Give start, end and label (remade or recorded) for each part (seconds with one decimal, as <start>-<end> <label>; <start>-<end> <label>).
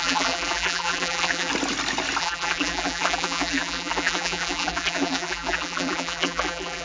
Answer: 0.0-1.5 remade; 1.5-2.2 recorded; 2.2-6.8 remade